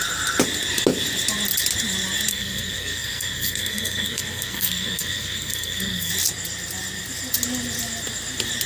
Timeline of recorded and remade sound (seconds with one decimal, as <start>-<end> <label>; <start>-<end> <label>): 0.0-2.3 recorded; 2.3-6.1 remade; 6.1-8.7 recorded